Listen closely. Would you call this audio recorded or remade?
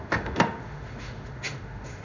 remade